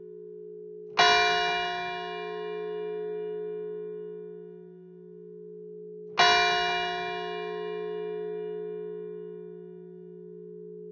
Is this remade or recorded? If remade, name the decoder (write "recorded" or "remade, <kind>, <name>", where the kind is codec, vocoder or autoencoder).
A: recorded